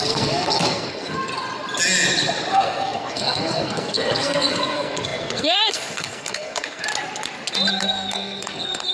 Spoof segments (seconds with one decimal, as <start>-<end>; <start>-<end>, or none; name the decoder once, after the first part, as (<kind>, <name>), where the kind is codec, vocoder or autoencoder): 0.0-1.3 (codec, SNAC); 2.5-6.9; 7.7-8.9